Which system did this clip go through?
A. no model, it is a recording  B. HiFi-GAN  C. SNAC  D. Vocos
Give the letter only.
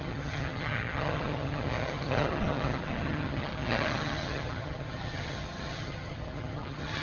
B